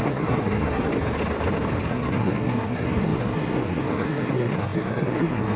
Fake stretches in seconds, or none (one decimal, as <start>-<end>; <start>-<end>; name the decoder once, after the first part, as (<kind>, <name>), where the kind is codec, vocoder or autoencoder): 0.0-0.9 (codec, SNAC); 1.9-5.6